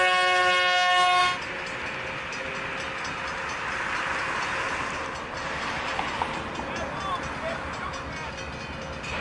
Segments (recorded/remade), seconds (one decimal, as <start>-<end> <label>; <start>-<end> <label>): 0.0-1.2 recorded; 1.2-2.5 remade; 2.5-9.2 recorded